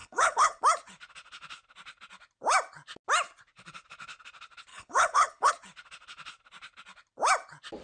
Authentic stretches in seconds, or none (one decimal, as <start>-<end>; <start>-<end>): 0.6-4.7; 5.5-7.8